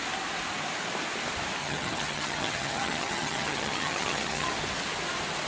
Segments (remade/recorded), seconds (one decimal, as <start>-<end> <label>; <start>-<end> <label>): 0.0-1.6 recorded; 1.6-4.5 remade; 4.5-5.5 recorded